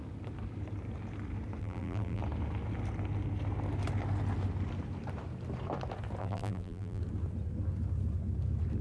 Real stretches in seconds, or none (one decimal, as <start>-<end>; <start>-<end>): 0.0-1.6; 2.2-6.2; 7.0-8.8